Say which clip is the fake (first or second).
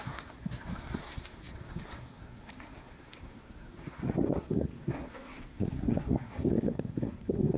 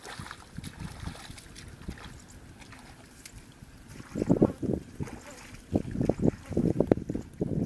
first